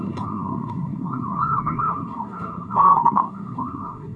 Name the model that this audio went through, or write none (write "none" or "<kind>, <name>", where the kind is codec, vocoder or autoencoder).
codec, SNAC